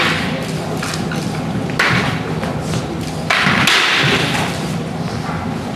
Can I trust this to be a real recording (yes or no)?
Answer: yes